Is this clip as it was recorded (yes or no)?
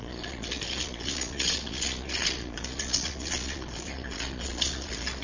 no